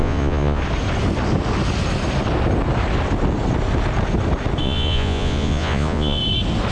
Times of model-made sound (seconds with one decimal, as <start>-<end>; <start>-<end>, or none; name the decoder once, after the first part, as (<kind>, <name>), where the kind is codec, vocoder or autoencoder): 0.0-0.6 (vocoder, Vocos); 4.6-6.2